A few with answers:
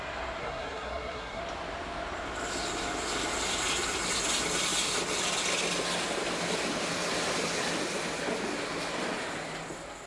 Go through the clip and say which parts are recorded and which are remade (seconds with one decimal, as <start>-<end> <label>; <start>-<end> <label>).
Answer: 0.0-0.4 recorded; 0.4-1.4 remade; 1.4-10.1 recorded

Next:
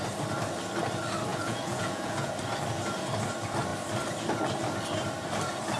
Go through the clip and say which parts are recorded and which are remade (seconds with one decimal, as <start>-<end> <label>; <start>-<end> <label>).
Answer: 0.0-1.3 recorded; 1.3-2.3 remade; 2.3-5.8 recorded

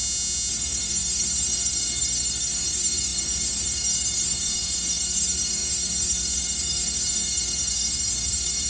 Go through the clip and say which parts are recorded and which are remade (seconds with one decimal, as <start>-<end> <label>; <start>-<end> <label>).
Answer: 0.0-0.5 recorded; 0.5-8.7 remade

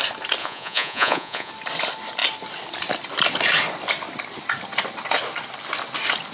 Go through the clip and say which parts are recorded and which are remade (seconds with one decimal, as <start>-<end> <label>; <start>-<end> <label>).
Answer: 0.0-0.4 recorded; 0.4-1.5 remade; 1.5-6.3 recorded

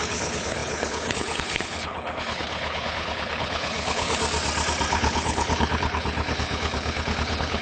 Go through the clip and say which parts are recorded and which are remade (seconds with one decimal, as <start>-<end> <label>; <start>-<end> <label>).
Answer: 0.0-4.2 remade; 4.2-4.9 recorded; 4.9-7.6 remade

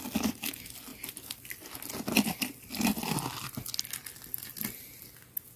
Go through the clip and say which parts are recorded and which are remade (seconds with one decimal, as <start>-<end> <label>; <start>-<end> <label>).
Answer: 0.0-5.6 recorded

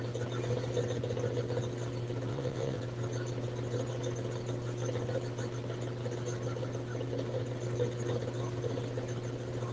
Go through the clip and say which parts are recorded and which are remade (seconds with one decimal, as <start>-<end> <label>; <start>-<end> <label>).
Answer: 0.0-2.3 recorded; 2.3-2.8 remade; 2.8-9.7 recorded